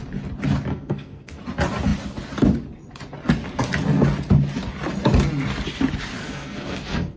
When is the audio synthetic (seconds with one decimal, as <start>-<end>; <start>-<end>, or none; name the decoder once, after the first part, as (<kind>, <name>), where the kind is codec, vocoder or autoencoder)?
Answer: 0.7-1.4 (codec, SNAC); 6.2-7.2